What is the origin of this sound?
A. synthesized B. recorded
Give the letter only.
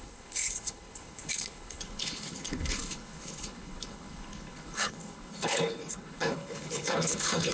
A